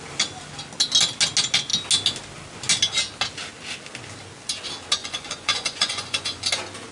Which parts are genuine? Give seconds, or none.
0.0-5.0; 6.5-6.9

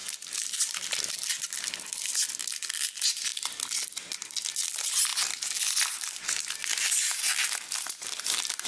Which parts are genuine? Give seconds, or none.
0.0-8.7

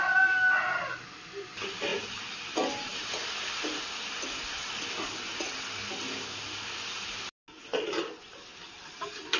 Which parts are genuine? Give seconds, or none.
0.0-9.4

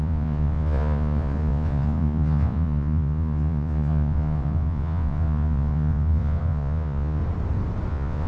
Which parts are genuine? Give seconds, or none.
7.2-7.9

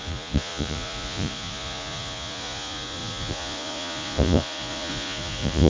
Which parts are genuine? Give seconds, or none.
none